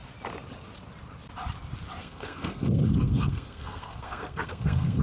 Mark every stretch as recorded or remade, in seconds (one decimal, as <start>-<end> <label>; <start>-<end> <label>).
0.0-2.0 recorded; 2.0-5.0 remade